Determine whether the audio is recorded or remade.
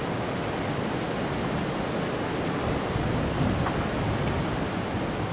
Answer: recorded